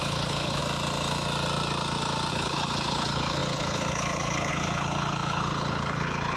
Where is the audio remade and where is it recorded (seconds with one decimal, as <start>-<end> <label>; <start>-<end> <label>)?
0.0-0.6 remade; 0.6-2.3 recorded; 2.3-6.4 remade